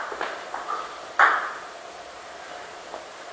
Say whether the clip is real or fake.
fake